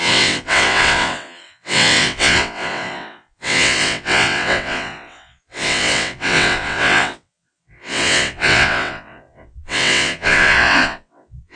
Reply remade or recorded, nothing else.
remade